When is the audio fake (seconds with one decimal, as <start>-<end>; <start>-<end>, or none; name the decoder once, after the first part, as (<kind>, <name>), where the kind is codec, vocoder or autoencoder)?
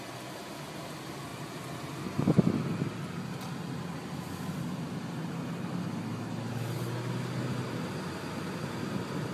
none